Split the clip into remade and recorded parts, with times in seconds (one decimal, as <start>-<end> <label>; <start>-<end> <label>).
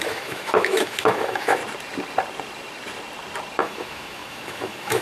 0.0-1.6 remade; 1.6-3.6 recorded; 3.6-5.0 remade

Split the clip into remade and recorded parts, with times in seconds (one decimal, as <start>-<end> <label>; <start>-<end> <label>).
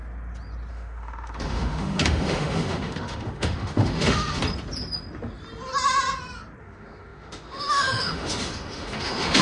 0.0-0.7 recorded; 0.7-4.4 remade; 4.4-6.6 recorded; 6.6-9.4 remade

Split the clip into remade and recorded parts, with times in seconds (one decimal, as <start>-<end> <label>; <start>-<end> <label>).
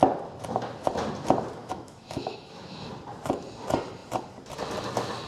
0.0-1.6 recorded; 1.6-2.9 remade; 2.9-5.3 recorded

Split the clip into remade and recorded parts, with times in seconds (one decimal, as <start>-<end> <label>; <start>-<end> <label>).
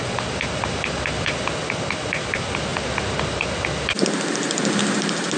0.0-5.4 recorded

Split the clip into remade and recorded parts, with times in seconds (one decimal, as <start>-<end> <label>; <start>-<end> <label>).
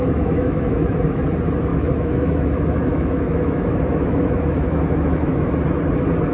0.0-1.2 remade; 1.2-1.7 recorded; 1.7-5.5 remade; 5.5-6.3 recorded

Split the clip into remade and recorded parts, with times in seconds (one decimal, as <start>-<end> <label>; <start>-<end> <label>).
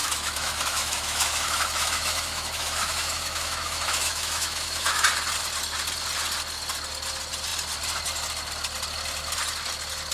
0.0-5.0 remade; 5.0-10.1 recorded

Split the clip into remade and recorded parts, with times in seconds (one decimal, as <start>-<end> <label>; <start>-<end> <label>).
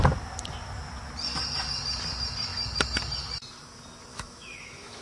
0.0-4.1 recorded; 4.1-5.0 remade